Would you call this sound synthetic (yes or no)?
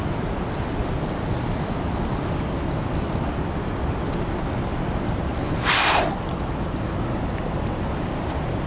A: no